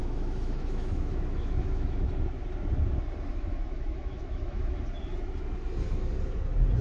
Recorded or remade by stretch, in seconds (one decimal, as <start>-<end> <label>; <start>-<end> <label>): 0.0-2.1 remade; 2.1-3.3 recorded; 3.3-4.8 remade; 4.8-6.8 recorded